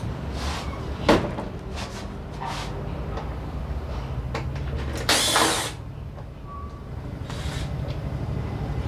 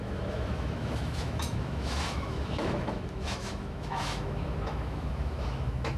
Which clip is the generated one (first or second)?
second